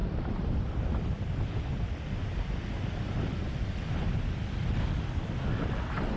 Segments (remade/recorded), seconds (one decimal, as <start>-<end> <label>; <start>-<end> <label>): 0.0-6.2 recorded